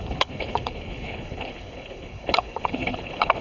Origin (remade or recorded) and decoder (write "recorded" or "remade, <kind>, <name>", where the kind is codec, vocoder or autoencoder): remade, codec, HILCodec